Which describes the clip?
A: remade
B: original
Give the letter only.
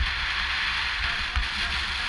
B